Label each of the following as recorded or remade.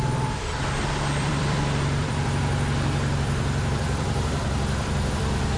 remade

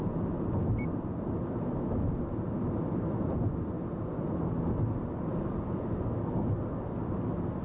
recorded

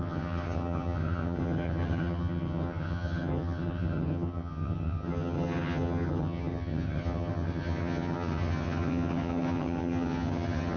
remade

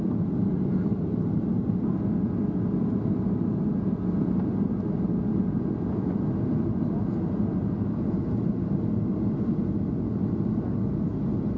recorded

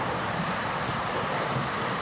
remade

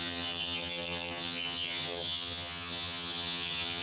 remade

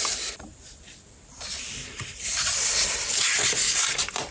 remade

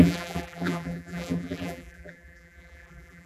remade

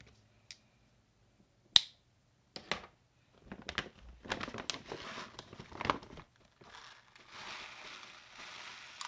recorded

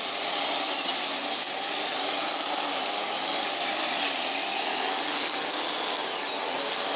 recorded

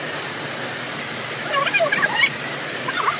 recorded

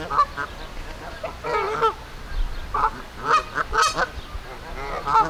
recorded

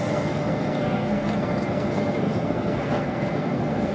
remade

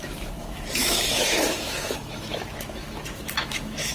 remade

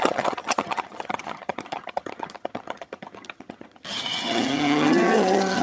remade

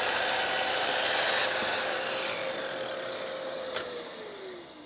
recorded